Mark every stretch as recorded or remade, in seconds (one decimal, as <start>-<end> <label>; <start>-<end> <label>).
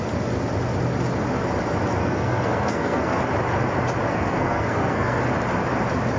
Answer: 0.0-2.0 recorded; 2.0-3.2 remade; 3.2-4.1 recorded; 4.1-5.2 remade; 5.2-6.2 recorded